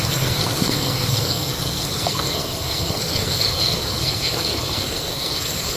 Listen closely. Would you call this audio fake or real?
fake